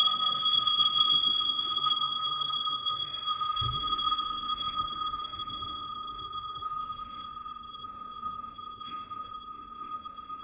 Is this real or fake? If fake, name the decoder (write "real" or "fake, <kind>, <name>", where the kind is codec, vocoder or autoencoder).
fake, codec, SNAC